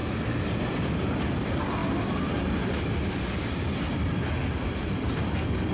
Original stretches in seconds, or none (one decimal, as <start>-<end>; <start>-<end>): 0.7-4.4; 5.2-5.7